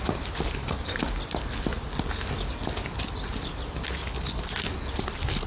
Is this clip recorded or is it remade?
recorded